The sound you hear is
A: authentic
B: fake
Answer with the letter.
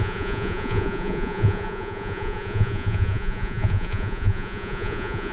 B